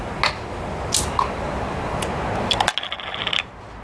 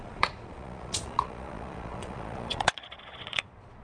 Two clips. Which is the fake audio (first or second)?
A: second